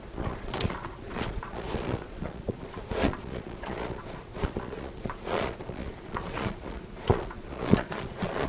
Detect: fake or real fake